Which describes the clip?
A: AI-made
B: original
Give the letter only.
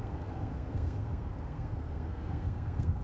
A